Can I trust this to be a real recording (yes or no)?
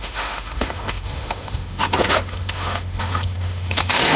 no